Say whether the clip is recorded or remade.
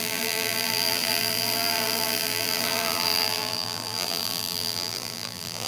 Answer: remade